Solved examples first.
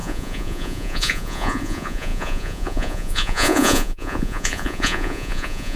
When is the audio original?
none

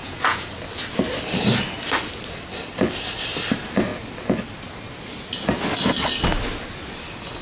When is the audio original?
0.5-7.4

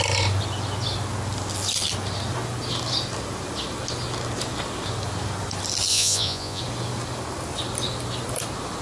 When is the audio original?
0.0-5.9; 6.6-8.8

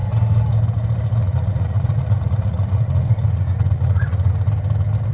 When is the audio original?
0.0-1.2; 4.3-5.1

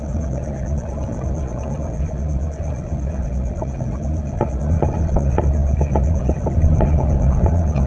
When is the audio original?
none

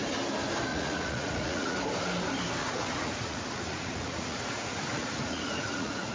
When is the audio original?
0.0-0.7; 1.8-2.6

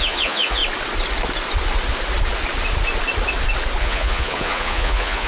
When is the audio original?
0.6-3.8